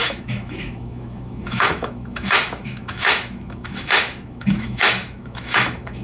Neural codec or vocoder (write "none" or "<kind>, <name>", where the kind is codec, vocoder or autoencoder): autoencoder, DAC-VAE